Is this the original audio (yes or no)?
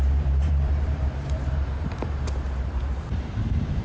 no